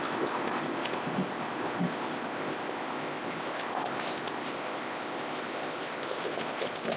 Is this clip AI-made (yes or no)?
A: yes